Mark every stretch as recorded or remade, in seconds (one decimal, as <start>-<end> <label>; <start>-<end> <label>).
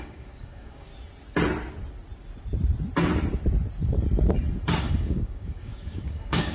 0.0-0.9 remade; 0.9-4.8 recorded; 4.8-6.5 remade